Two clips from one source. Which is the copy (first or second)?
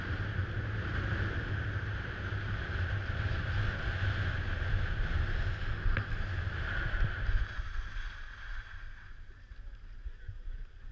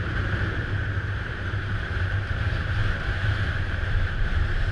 second